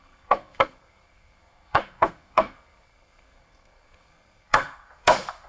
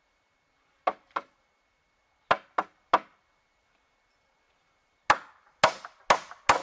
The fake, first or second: first